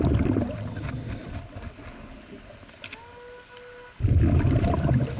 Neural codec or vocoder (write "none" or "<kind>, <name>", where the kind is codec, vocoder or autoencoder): none